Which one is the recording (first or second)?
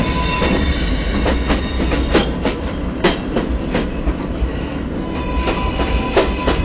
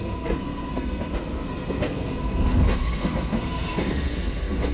first